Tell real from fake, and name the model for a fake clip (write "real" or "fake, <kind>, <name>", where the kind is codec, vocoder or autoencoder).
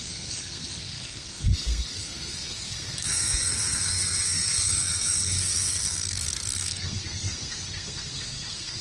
fake, codec, SNAC